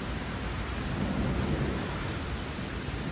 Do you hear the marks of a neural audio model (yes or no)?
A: yes